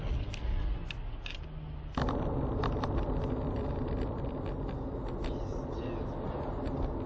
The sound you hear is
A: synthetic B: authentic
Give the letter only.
B